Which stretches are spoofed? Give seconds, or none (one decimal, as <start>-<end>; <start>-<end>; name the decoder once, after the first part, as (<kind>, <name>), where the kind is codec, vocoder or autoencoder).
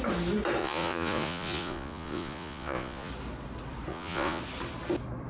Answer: 0.6-3.1 (vocoder, Vocos); 3.9-4.4